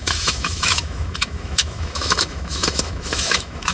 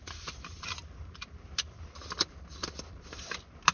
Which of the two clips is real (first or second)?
second